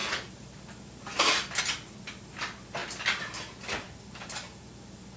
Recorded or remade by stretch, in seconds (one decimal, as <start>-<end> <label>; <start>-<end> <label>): 0.0-5.2 recorded